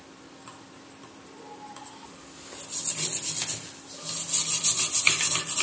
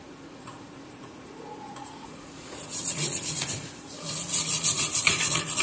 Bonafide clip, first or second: first